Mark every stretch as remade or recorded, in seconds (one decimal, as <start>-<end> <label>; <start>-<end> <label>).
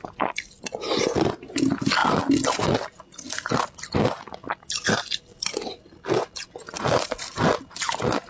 0.0-8.3 recorded